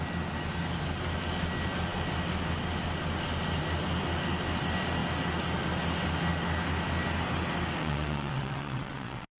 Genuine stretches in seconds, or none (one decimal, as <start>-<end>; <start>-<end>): 0.0-7.8